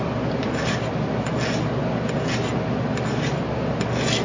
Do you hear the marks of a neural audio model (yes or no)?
no